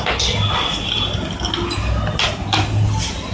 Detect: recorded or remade recorded